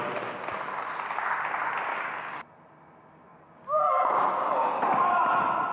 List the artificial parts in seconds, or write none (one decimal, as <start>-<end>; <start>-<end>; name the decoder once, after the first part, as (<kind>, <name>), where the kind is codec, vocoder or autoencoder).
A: 1.9-2.4 (codec, DAC); 3.3-4.0